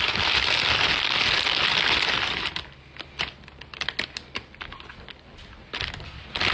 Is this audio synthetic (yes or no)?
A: no